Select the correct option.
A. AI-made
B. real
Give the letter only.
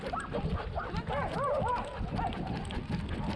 B